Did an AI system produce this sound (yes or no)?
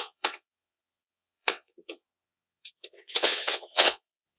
yes